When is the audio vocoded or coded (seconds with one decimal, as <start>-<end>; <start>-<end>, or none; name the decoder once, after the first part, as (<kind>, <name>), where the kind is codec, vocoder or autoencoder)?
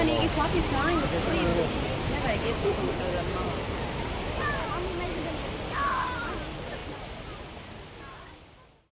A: none